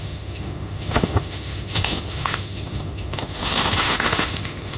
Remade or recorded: remade